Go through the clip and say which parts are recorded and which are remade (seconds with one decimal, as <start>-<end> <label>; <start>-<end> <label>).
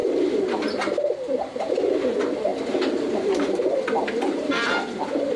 0.0-2.5 recorded; 2.5-4.4 remade; 4.4-5.4 recorded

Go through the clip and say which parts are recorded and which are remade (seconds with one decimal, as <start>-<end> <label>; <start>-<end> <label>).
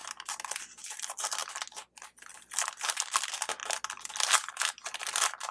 0.0-5.5 recorded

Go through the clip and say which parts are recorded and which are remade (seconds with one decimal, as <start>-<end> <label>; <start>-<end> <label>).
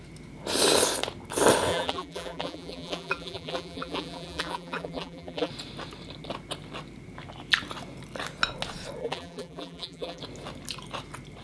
0.0-1.7 recorded; 1.7-5.5 remade; 5.5-9.0 recorded; 9.0-10.2 remade; 10.2-11.4 recorded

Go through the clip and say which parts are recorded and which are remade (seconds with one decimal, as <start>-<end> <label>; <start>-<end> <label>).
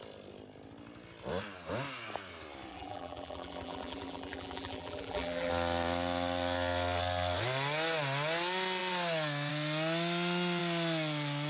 0.0-2.7 recorded; 2.7-5.5 remade; 5.5-11.5 recorded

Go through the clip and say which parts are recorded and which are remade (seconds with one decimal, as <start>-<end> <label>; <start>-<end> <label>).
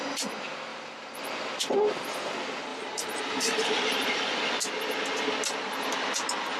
0.0-0.7 recorded; 0.7-1.5 remade; 1.5-2.7 recorded; 2.7-4.2 remade; 4.2-6.6 recorded